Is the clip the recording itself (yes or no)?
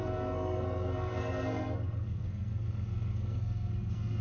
no